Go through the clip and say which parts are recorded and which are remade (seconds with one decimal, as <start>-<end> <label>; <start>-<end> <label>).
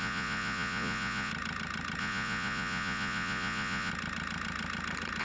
0.0-1.3 remade; 1.3-2.0 recorded; 2.0-3.9 remade; 3.9-5.2 recorded